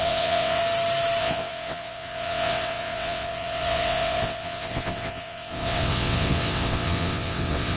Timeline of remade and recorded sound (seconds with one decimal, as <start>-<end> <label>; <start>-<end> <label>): 0.0-0.6 remade; 0.6-1.2 recorded; 1.2-7.8 remade

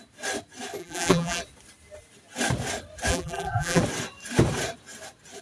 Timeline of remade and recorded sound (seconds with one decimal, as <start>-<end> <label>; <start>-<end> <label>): 0.0-0.8 recorded; 0.8-1.4 remade; 1.4-3.1 recorded; 3.1-3.8 remade; 3.8-5.4 recorded

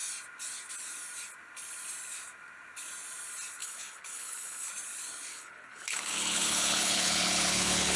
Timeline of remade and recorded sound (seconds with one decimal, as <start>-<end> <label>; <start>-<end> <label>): 0.0-3.6 recorded; 3.6-4.7 remade; 4.7-5.3 recorded; 5.3-8.0 remade

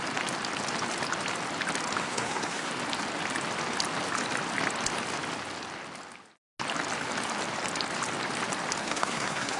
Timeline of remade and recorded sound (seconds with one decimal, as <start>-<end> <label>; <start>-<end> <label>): 0.0-2.0 recorded; 2.0-2.7 remade; 2.7-8.8 recorded; 8.8-9.6 remade